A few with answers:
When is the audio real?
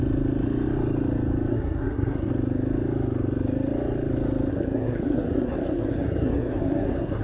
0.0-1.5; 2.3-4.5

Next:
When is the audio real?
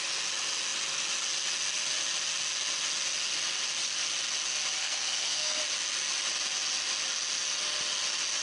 0.0-4.8; 5.6-8.4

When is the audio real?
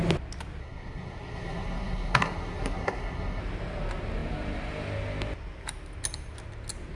0.0-0.6; 3.4-7.0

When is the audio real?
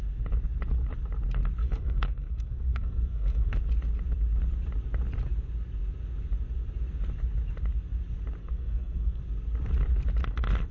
0.0-1.6; 3.5-8.4; 9.2-10.7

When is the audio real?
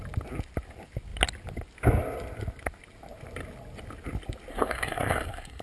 0.0-4.5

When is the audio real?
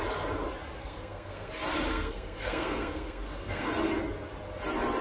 0.0-0.8; 1.5-1.9; 3.7-5.0